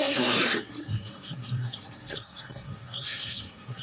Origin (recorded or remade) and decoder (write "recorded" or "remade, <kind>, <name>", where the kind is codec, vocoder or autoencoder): remade, codec, SNAC